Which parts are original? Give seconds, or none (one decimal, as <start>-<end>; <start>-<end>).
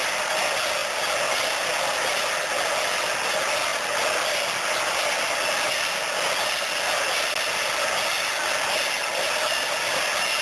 0.0-10.4